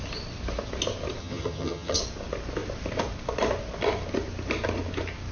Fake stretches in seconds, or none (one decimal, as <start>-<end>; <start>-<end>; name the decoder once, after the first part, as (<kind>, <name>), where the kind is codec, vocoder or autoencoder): 1.2-2.0 (vocoder, HiFi-GAN)